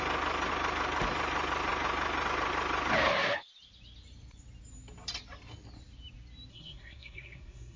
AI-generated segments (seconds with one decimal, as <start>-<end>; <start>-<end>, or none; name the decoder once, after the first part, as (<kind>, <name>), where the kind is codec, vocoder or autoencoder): 6.5-7.8 (codec, SNAC)